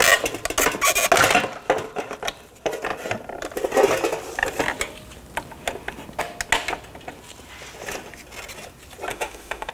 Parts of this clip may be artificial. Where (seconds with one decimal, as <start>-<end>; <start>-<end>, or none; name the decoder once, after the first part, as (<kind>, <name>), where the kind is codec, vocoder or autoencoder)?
9.1-9.7 (autoencoder, DAC-VAE)